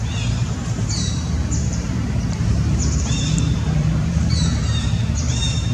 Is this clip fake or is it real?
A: fake